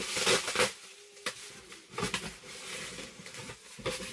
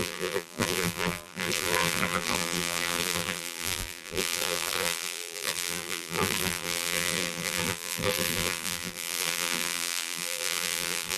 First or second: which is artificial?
second